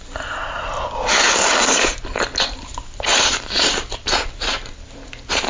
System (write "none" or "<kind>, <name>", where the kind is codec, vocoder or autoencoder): none